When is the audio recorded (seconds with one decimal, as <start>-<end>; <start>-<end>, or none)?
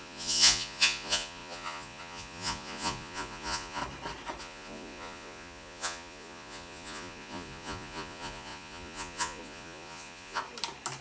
3.8-4.4; 10.4-11.0